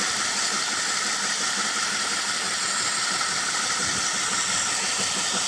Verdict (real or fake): real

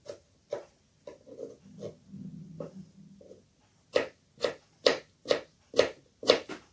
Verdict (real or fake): real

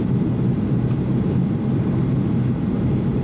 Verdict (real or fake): fake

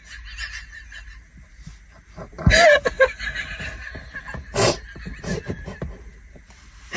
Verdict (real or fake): real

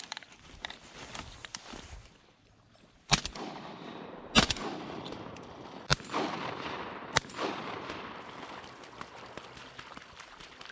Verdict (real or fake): fake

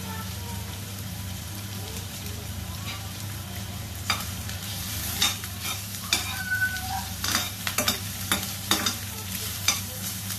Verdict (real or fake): fake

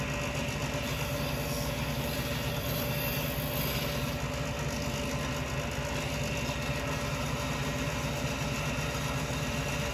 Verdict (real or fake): real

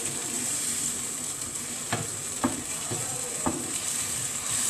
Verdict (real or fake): fake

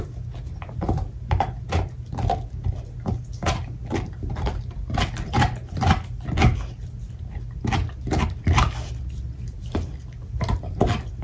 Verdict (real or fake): real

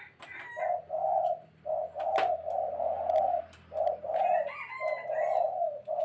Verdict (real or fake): real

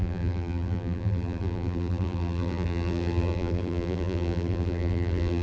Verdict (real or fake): fake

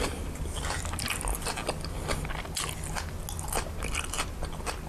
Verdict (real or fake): real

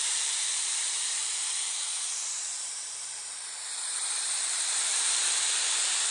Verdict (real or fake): fake